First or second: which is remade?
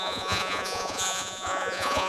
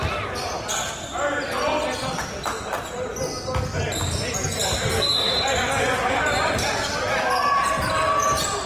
first